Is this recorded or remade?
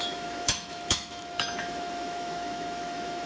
remade